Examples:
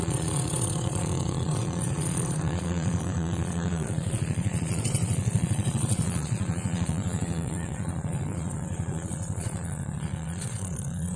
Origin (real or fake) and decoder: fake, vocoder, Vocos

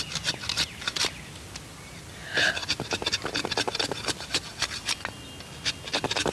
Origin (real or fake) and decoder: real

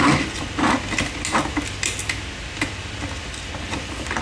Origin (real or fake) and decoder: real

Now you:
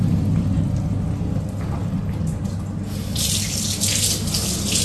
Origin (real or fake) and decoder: real